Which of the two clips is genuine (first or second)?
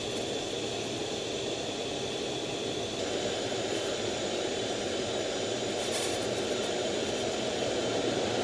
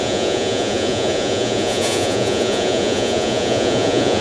first